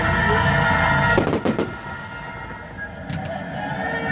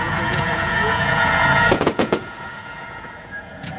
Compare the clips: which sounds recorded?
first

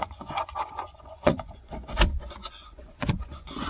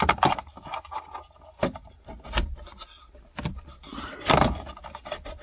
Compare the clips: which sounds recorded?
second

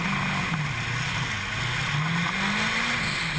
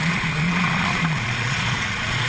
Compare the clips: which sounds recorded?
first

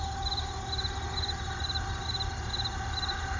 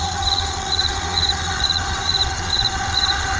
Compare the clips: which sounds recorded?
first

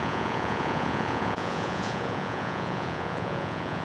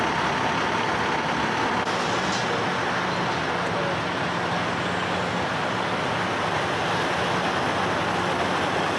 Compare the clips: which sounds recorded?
second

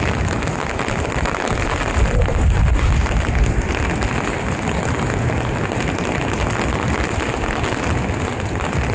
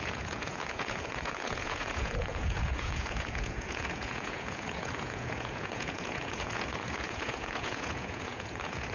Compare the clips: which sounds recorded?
first